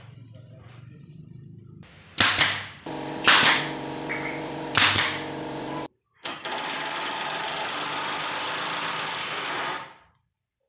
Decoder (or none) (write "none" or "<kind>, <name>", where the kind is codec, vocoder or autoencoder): vocoder, BigVGAN v2